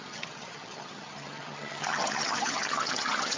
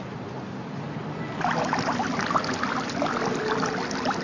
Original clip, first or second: second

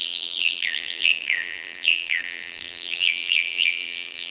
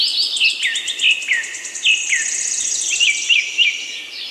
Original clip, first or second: second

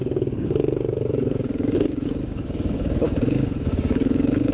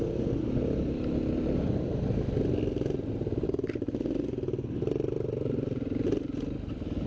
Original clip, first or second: second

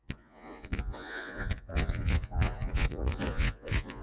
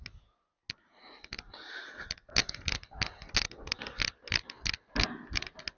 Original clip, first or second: second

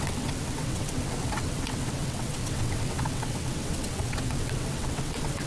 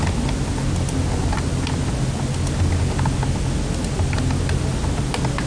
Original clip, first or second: second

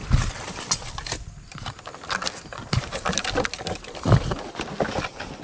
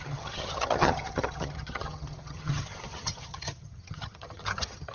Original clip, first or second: first